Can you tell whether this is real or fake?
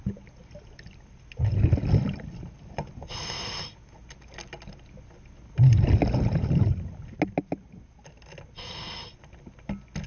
real